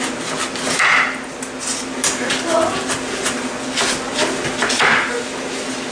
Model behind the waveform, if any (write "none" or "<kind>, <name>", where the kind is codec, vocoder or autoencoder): none